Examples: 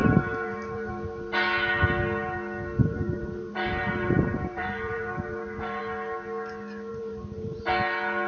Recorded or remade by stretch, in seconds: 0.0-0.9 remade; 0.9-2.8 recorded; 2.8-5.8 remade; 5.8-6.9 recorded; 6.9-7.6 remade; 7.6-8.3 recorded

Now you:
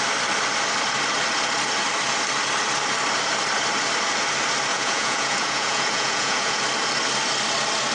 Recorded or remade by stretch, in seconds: 0.0-4.7 recorded; 4.7-6.6 remade; 6.6-7.9 recorded

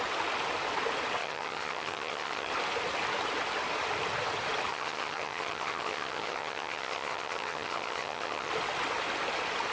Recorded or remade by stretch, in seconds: 0.0-1.2 recorded; 1.2-2.5 remade; 2.5-4.7 recorded; 4.7-8.5 remade; 8.5-9.7 recorded

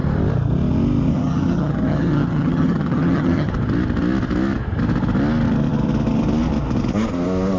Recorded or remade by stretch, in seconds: 0.0-1.1 recorded; 1.1-3.5 remade; 3.5-7.6 recorded

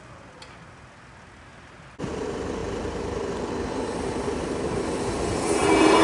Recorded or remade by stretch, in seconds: 0.0-6.0 recorded